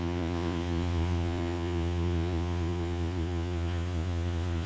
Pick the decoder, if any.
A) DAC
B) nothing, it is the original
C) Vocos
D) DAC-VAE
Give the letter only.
C